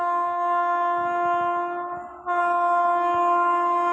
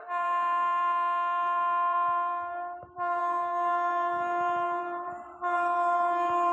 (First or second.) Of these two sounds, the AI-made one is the second